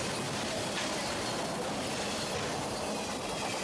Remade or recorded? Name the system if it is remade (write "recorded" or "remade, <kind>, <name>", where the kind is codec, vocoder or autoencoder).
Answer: recorded